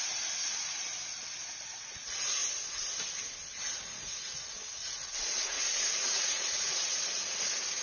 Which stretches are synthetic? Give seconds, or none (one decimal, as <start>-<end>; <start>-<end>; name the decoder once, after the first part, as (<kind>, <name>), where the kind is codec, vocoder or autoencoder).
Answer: 0.0-0.9 (vocoder, Vocos); 1.6-2.4; 3.8-7.8